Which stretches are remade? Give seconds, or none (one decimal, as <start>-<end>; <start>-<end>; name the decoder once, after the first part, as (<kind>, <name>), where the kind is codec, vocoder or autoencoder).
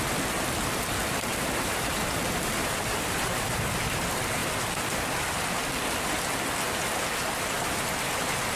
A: 1.0-3.8 (vocoder, BigVGAN v2)